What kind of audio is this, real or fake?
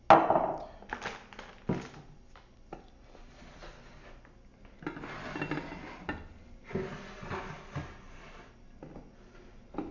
real